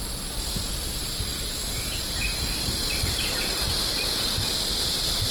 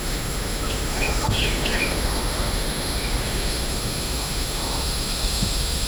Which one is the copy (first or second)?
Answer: second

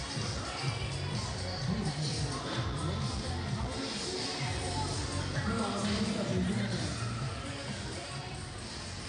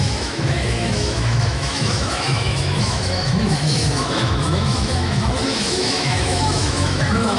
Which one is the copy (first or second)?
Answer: second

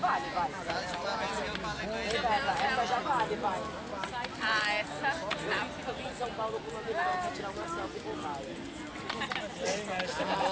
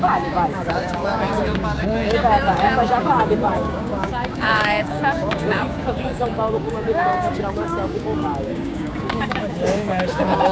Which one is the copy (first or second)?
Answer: second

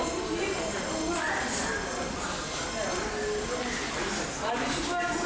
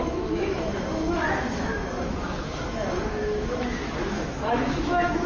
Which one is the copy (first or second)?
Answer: second